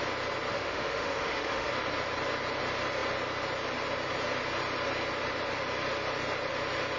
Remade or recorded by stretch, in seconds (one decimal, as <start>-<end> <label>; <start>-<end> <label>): 0.0-0.5 recorded; 0.5-1.7 remade; 1.7-7.0 recorded